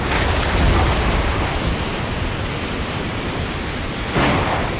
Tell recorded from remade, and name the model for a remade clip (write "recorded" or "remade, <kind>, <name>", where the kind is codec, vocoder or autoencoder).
recorded